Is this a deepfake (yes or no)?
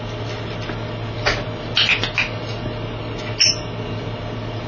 no